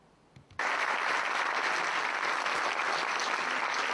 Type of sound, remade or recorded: recorded